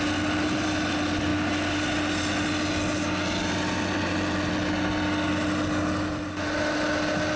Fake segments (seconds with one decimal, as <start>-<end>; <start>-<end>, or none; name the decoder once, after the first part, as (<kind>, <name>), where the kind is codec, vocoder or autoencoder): none